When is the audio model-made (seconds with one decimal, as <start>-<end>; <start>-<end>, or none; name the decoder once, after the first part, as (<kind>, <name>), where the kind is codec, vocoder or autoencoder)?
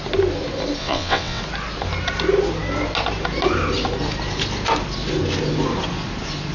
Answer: 0.8-1.4 (vocoder, WaveNeXt)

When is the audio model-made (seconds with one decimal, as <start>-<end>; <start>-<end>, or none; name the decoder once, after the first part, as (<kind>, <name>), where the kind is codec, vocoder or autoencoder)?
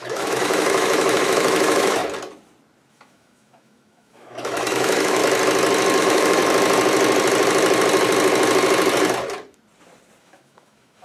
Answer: 0.0-2.0 (autoencoder, DAC-VAE); 2.9-5.2; 6.0-6.4; 10.2-11.0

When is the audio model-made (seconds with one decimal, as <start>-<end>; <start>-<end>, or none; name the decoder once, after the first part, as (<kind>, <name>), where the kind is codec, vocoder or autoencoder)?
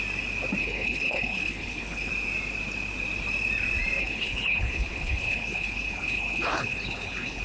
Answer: 0.6-2.1 (codec, HILCodec); 4.0-7.4